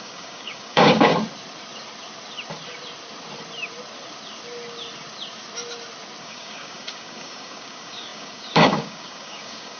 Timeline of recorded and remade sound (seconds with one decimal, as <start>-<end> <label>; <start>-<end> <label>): 0.0-1.1 remade; 1.1-6.2 recorded; 6.2-9.8 remade